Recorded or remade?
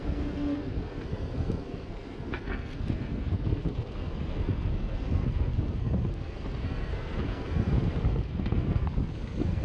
remade